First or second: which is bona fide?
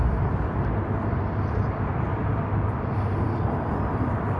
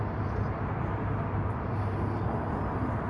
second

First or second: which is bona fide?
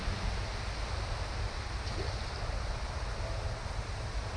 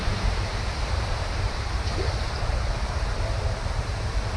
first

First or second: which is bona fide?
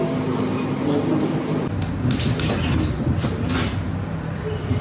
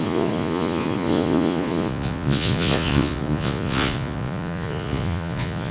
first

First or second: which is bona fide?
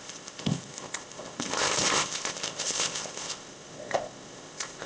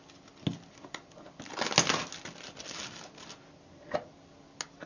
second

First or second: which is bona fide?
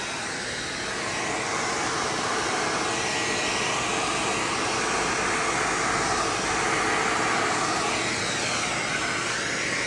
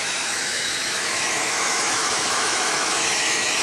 first